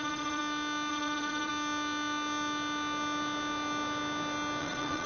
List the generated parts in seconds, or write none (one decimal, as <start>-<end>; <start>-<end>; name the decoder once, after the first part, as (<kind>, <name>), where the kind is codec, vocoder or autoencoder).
0.0-0.4 (vocoder, Vocos); 0.9-1.5; 4.6-5.1